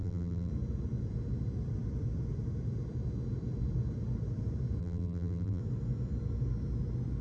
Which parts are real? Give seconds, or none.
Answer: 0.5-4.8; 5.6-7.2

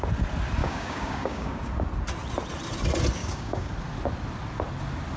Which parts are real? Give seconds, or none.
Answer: 0.0-0.6; 1.7-3.2; 3.7-5.2

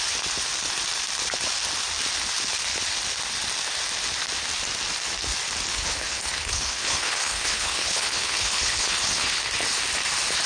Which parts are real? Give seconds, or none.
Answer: 0.0-5.7; 9.4-10.5